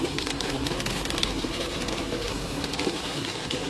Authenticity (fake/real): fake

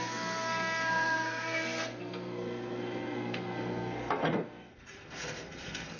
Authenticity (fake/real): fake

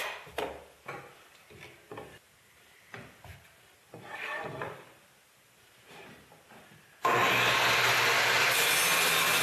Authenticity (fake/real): real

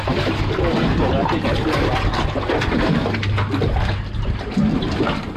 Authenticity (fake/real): real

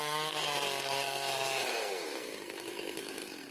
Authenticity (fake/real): fake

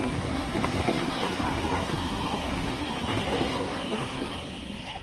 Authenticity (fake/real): fake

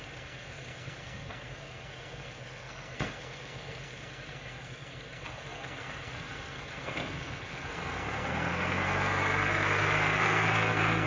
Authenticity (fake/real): fake